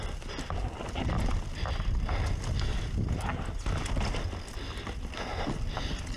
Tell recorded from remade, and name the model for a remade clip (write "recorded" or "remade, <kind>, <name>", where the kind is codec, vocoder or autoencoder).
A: recorded